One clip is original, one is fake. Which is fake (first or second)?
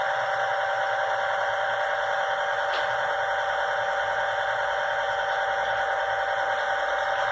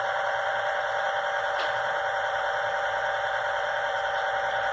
second